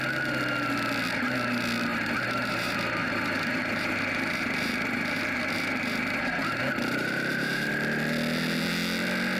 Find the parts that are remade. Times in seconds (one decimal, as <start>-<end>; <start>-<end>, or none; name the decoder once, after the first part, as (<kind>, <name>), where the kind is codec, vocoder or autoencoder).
1.9-6.6 (vocoder, BigVGAN v2); 7.0-7.7